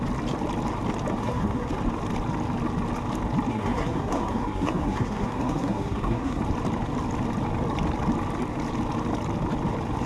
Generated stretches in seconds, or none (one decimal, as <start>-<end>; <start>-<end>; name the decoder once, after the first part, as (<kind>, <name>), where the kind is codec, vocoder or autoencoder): 1.2-1.7 (codec, SNAC); 3.5-6.4